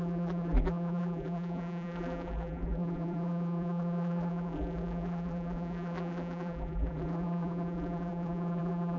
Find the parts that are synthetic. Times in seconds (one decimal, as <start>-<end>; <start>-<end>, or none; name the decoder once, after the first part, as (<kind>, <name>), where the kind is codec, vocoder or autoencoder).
0.0-9.0 (vocoder, BigVGAN v2)